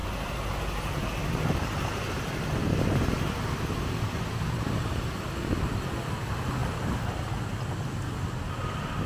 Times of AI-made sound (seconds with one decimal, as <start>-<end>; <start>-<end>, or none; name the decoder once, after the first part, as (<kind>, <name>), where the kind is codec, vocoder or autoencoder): none